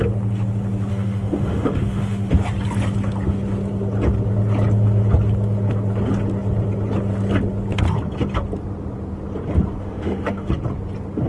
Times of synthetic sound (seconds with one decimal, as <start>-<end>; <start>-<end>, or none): 0.9-2.3; 9.8-10.5